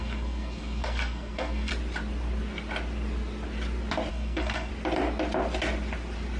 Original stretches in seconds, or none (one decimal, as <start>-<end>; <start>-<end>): 1.7-4.1; 4.7-6.4